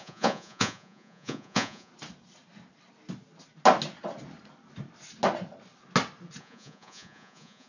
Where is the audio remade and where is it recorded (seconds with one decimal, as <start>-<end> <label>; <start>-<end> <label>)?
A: 0.0-1.9 remade; 1.9-6.4 recorded; 6.4-7.7 remade